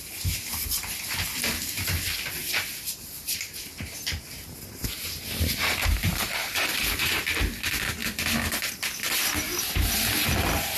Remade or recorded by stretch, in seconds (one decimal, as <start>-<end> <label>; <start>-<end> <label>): 0.0-2.4 recorded; 2.4-7.2 remade; 7.2-10.8 recorded

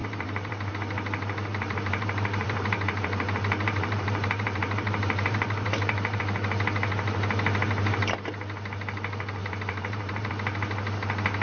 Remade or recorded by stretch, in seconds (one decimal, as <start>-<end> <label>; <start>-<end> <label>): 0.0-0.7 remade; 0.7-1.5 recorded; 1.5-6.2 remade; 6.2-9.4 recorded; 9.4-10.3 remade; 10.3-11.4 recorded

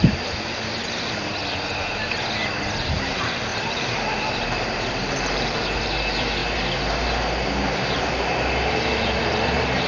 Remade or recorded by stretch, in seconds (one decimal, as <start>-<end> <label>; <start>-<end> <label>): 0.0-1.4 remade; 1.4-2.9 recorded; 2.9-9.9 remade

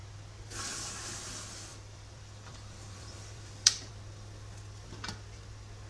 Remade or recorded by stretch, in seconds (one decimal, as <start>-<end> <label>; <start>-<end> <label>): 0.0-1.7 recorded; 1.7-3.9 remade; 3.9-5.9 recorded

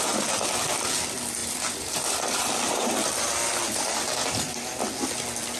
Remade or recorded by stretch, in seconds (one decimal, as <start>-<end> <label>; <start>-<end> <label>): 0.0-1.4 recorded; 1.4-4.8 remade; 4.8-5.6 recorded

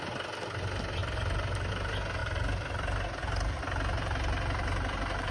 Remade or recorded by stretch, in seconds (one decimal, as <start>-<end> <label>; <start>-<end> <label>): 0.0-5.3 recorded

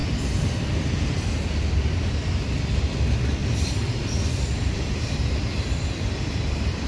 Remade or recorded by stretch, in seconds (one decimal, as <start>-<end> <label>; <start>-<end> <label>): 0.0-3.4 recorded; 3.4-6.9 remade

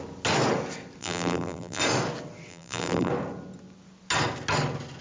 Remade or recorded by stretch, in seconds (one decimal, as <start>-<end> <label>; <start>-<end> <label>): 0.0-1.0 recorded; 1.0-1.8 remade; 1.8-2.5 recorded; 2.5-3.1 remade; 3.1-5.0 recorded